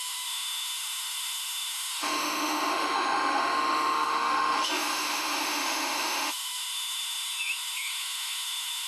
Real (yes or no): no